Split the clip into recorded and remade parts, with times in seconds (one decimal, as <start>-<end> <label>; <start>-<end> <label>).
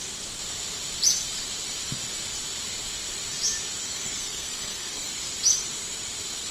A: 0.0-3.8 recorded; 3.8-5.1 remade; 5.1-6.5 recorded